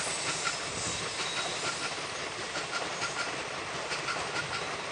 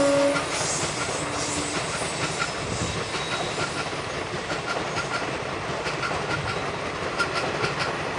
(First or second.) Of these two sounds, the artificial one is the first